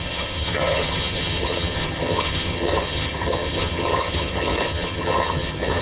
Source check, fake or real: fake